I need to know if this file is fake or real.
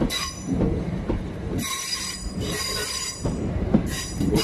fake